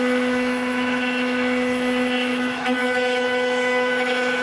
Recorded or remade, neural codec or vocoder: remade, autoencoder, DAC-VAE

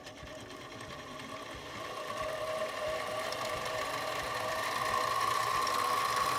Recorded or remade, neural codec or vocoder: remade, vocoder, BigVGAN v2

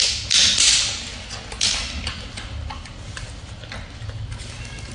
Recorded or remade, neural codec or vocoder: recorded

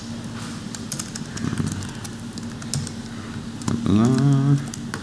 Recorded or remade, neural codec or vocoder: recorded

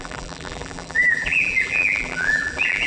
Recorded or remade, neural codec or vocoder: remade, vocoder, BigVGAN v2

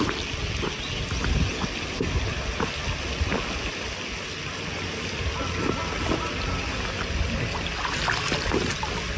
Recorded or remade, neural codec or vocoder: recorded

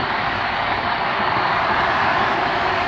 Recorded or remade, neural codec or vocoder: remade, codec, DAC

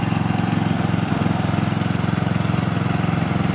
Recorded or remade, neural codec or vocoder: remade, vocoder, BigVGAN v2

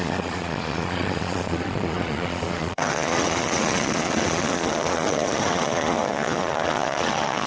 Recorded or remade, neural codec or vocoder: remade, vocoder, Vocos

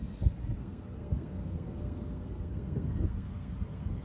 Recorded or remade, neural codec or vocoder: remade, codec, SNAC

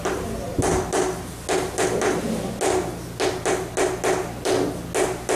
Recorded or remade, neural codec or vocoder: recorded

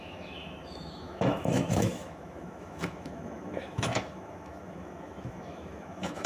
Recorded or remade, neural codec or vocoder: remade, autoencoder, DAC-VAE